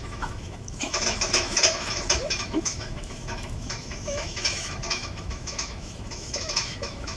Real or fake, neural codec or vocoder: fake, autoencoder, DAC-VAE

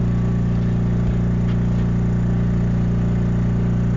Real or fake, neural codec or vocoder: real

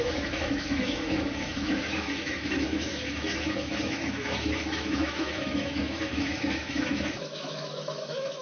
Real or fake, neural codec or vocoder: fake, autoencoder, DAC-VAE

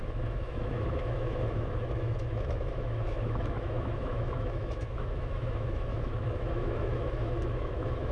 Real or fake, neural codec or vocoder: fake, autoencoder, DAC-VAE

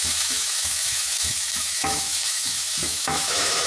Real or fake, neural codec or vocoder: fake, autoencoder, DAC-VAE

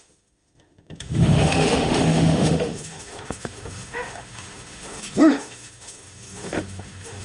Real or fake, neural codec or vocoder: fake, autoencoder, DAC-VAE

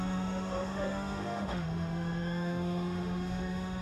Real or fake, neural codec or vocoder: fake, autoencoder, DAC-VAE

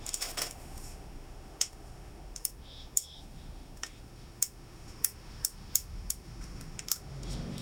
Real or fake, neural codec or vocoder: fake, autoencoder, DAC-VAE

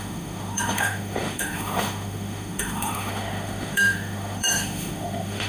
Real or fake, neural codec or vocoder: fake, autoencoder, DAC-VAE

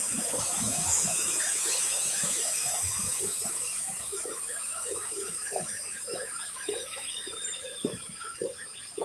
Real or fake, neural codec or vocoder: fake, autoencoder, DAC-VAE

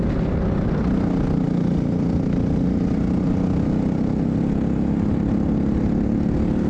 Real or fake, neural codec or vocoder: real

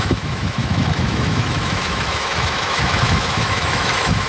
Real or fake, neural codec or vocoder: fake, autoencoder, DAC-VAE